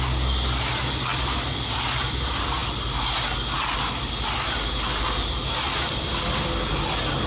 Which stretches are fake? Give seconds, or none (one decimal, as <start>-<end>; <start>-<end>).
none